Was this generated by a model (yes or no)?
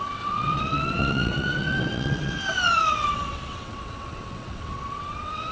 yes